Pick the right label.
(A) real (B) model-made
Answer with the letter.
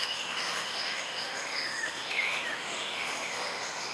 B